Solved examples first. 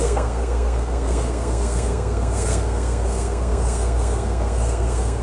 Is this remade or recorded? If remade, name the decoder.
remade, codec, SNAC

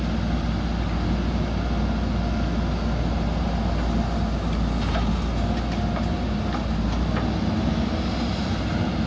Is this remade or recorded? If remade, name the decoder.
recorded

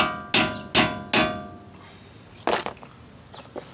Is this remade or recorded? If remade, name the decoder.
recorded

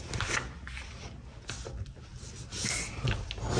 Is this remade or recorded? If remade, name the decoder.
recorded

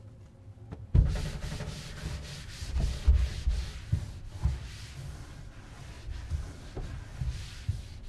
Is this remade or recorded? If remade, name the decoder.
recorded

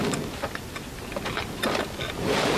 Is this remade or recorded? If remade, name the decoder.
recorded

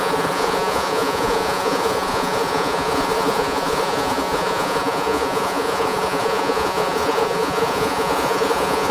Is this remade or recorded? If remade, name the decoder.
remade, vocoder, Vocos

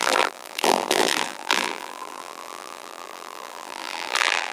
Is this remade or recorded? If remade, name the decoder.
remade, vocoder, BigVGAN v2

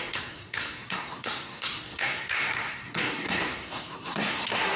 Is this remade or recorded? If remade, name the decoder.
remade, codec, SNAC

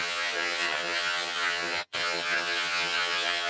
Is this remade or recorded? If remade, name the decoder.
remade, vocoder, HiFi-GAN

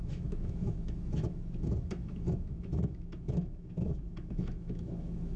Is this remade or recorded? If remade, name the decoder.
remade, autoencoder, DAC-VAE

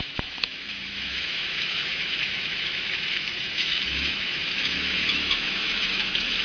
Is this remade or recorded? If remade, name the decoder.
remade, autoencoder, DAC-VAE